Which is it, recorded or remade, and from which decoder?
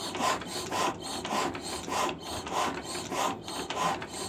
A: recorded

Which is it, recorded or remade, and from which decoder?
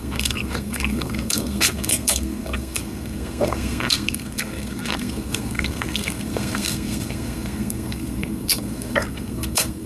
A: remade, codec, SNAC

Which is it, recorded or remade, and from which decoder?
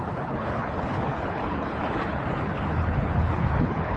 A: remade, codec, HILCodec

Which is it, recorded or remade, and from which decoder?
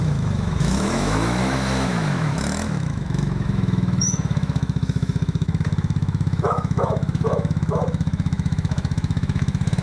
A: remade, autoencoder, DAC-VAE